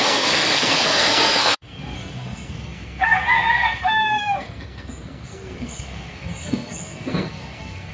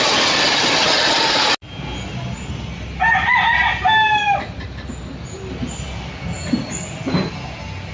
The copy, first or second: first